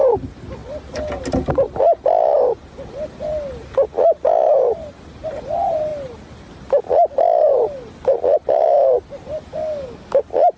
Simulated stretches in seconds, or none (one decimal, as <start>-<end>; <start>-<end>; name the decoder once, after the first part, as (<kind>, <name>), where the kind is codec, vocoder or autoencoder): 9.5-10.2 (codec, DAC)